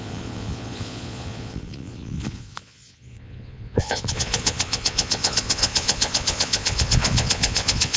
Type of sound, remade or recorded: remade